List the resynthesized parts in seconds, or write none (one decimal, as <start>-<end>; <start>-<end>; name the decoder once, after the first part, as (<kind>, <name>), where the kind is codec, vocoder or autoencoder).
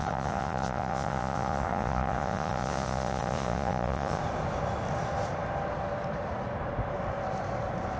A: 0.0-4.2 (vocoder, Vocos)